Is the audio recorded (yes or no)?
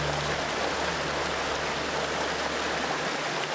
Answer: yes